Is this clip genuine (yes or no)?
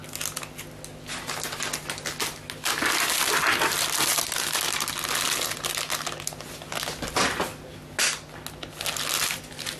yes